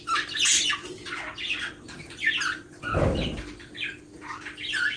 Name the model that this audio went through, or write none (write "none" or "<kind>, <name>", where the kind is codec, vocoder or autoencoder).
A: none